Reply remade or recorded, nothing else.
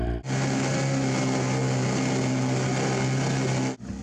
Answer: recorded